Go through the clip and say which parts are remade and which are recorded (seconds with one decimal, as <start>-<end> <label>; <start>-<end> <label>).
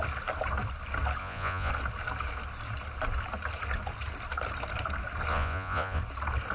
0.0-1.2 recorded; 1.2-1.7 remade; 1.7-5.3 recorded; 5.3-6.0 remade; 6.0-6.5 recorded